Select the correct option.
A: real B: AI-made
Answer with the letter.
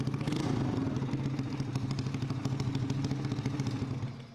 A